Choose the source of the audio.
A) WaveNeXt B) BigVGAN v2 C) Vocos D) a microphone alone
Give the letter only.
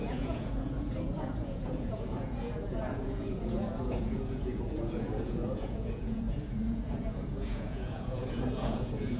C